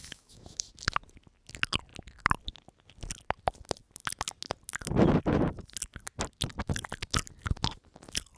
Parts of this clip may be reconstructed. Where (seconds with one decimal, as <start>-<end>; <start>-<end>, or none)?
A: 0.0-0.7